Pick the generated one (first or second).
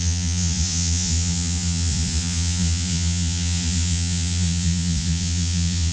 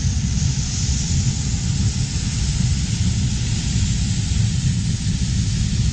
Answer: first